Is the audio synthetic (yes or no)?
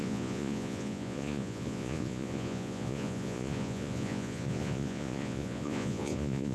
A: yes